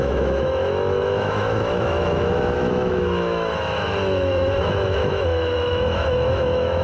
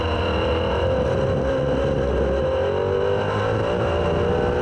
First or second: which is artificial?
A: first